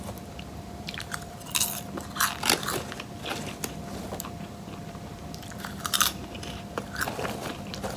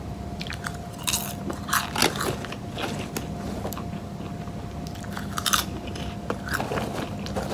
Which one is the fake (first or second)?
first